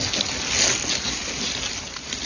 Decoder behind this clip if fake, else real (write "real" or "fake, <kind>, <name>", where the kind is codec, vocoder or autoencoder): real